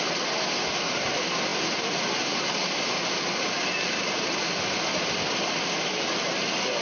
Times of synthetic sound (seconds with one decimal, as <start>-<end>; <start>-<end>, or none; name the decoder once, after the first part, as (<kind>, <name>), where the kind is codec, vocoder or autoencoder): none

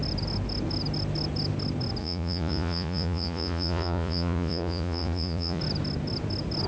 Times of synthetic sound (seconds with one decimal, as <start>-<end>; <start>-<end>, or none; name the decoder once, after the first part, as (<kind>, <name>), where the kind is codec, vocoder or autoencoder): 2.0-5.6 (vocoder, Vocos)

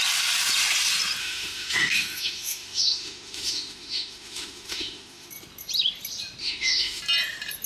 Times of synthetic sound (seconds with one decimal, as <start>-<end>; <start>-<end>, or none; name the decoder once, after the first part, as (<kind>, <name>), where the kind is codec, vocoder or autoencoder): 1.2-5.3 (autoencoder, DAC-VAE); 6.4-7.0

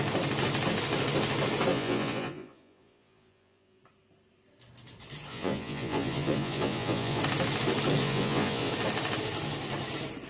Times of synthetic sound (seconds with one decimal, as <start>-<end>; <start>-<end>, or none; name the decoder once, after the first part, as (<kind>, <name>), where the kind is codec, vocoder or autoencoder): 1.7-3.8 (vocoder, Vocos); 5.3-7.2; 8.0-8.7

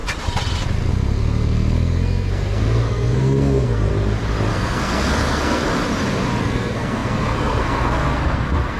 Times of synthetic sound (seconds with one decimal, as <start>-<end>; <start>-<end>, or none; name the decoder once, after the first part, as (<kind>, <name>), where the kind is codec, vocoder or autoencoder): 0.9-3.9 (codec, SNAC); 4.5-5.7; 6.4-8.8

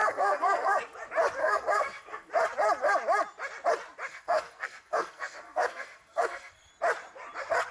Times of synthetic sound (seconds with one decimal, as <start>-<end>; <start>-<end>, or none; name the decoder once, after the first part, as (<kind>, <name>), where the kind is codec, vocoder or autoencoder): 0.0-0.8 (codec, SNAC); 1.4-2.3; 4.1-6.7